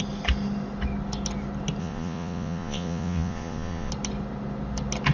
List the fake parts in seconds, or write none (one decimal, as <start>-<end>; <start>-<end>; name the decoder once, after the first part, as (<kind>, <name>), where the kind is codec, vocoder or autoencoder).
1.8-3.9 (vocoder, Vocos)